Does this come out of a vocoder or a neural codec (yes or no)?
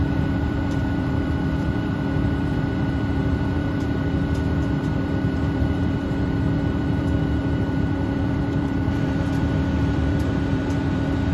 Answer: yes